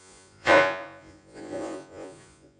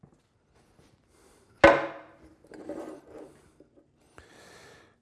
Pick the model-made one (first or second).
first